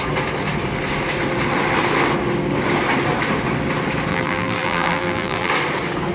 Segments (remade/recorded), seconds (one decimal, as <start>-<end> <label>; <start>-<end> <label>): 0.0-4.1 recorded; 4.1-5.5 remade; 5.5-6.1 recorded